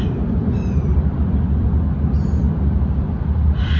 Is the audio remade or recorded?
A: remade